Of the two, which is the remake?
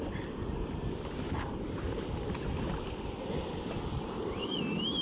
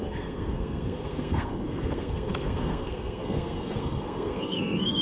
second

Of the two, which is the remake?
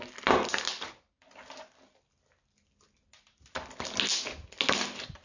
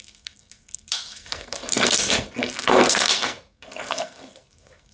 second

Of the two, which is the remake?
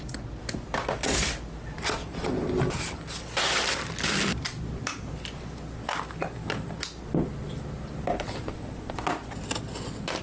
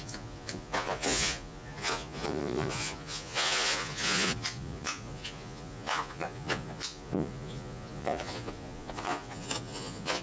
second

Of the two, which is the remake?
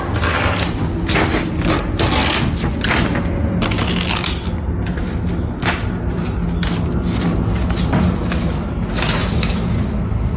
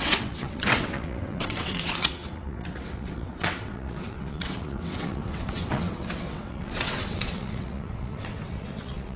second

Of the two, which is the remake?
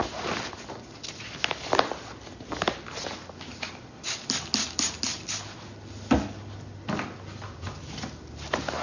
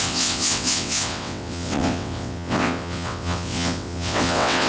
second